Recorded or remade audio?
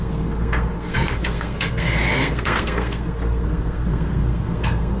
remade